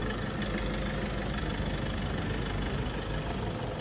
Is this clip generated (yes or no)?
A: no